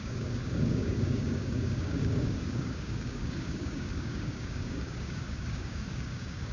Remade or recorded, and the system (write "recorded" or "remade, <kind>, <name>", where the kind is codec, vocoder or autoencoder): remade, codec, DAC